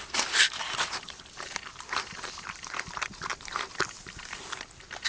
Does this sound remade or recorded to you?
recorded